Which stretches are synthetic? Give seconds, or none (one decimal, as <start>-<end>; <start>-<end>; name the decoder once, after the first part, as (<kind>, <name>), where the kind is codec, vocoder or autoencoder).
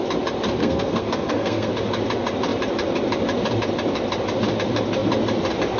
0.6-1.7 (codec, SNAC)